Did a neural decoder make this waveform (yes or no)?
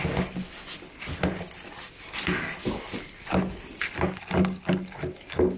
no